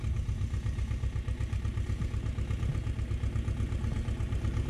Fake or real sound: real